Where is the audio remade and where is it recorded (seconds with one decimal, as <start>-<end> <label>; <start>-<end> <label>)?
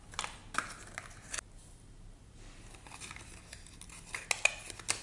0.0-5.0 recorded